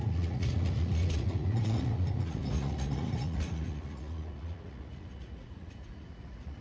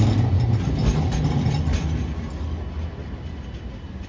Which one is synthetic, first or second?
first